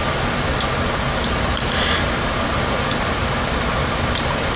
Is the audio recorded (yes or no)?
yes